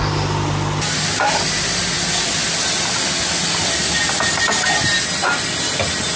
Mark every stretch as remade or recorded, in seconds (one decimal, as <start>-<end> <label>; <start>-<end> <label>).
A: 0.0-6.2 recorded

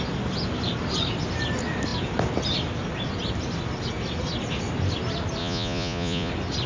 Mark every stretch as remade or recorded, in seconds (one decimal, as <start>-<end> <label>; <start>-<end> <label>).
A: 0.0-5.4 recorded; 5.4-6.3 remade; 6.3-6.7 recorded

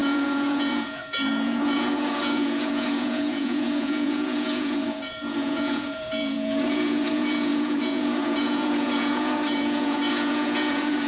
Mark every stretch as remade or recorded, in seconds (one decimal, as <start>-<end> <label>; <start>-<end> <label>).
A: 0.0-11.1 remade

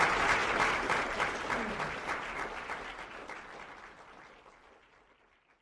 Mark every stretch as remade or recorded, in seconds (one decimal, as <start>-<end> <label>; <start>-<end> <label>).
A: 0.0-5.6 recorded

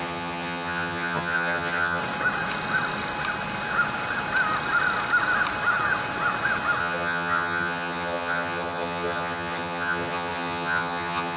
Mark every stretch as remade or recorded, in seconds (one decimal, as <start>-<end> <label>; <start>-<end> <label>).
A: 0.0-2.0 remade; 2.0-6.8 recorded; 6.8-11.4 remade

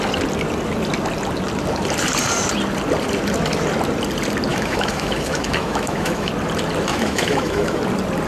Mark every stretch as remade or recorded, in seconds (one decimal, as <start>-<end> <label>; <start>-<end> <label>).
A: 0.0-4.5 recorded; 4.5-6.3 remade; 6.3-6.9 recorded; 6.9-7.8 remade; 7.8-8.3 recorded

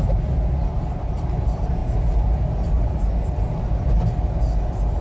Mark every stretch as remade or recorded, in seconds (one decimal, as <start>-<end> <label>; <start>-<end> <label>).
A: 0.0-5.0 recorded

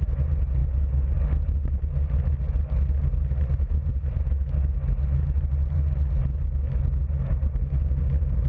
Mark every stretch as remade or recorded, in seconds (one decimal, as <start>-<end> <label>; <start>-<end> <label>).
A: 0.0-8.5 recorded